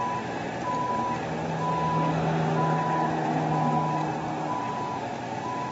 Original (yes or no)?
yes